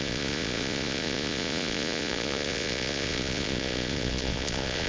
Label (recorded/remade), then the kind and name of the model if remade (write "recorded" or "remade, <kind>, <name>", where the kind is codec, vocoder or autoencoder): remade, vocoder, Vocos